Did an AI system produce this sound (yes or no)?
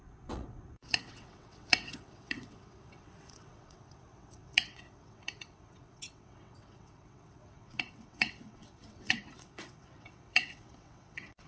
yes